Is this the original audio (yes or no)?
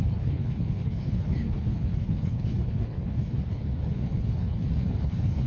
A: no